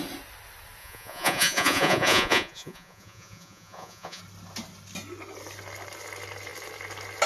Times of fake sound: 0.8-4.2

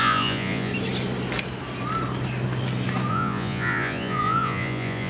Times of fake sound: 0.0-0.7; 3.1-5.1

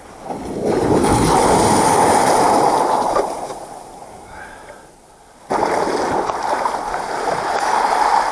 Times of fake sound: none

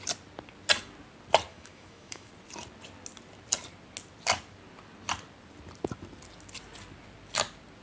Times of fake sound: 1.5-2.3

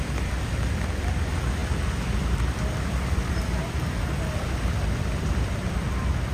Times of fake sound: 0.0-6.3

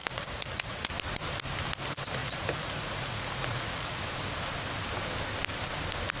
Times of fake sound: 0.0-0.9; 2.2-4.0